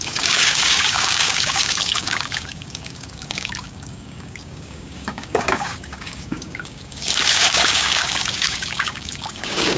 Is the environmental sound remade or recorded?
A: remade